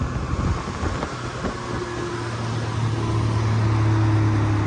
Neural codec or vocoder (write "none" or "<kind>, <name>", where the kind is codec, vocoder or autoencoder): none